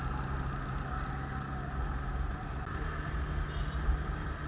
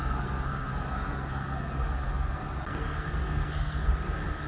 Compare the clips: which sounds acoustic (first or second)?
first